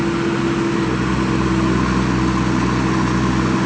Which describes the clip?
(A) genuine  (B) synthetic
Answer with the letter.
A